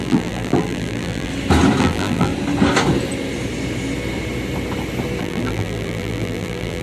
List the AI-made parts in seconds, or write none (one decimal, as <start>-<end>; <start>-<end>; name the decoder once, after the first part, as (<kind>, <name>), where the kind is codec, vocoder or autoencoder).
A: 0.0-1.3 (vocoder, BigVGAN v2); 1.8-2.3; 5.2-6.8